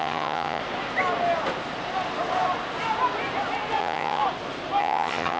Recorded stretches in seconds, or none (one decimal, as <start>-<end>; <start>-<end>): 0.6-3.8; 4.2-4.8